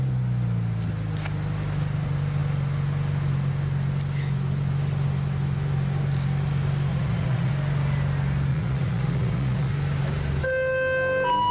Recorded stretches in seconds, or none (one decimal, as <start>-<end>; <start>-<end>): 0.0-6.9; 7.5-8.5; 9.7-11.5